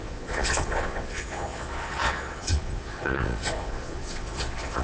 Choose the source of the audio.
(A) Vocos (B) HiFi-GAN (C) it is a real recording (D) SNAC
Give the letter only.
A